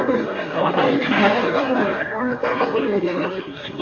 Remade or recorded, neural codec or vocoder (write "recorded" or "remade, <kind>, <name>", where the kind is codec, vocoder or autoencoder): remade, codec, SNAC